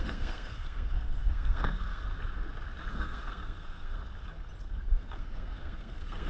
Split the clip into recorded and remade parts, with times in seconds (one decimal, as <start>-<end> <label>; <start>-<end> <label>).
0.0-2.1 remade; 2.1-2.9 recorded; 2.9-4.0 remade; 4.0-4.6 recorded; 4.6-6.3 remade